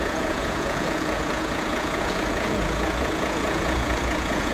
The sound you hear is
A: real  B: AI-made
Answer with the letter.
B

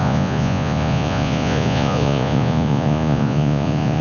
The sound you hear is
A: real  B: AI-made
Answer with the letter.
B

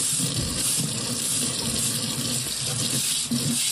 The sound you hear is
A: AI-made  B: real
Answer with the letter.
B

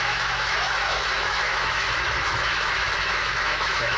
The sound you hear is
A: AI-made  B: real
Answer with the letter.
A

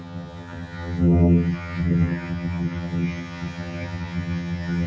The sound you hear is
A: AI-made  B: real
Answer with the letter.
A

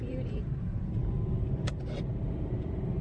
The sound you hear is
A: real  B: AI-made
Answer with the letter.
B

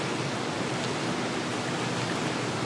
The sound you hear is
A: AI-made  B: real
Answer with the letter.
B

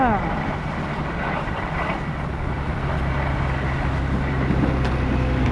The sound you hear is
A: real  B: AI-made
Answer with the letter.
A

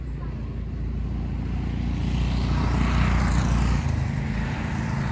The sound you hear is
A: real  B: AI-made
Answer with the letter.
A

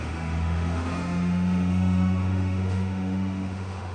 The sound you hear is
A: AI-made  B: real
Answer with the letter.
A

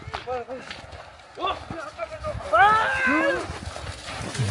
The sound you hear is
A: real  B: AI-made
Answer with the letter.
A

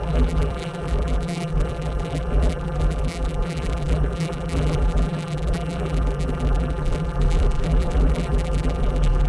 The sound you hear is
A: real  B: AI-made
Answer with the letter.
B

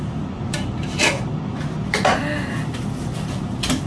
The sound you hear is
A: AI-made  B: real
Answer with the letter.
B